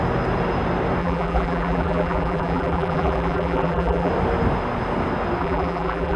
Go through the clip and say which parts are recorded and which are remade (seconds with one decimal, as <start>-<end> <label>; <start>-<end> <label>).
0.0-1.0 recorded; 1.0-4.1 remade; 4.1-5.4 recorded; 5.4-6.2 remade